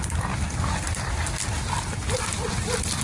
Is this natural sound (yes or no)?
yes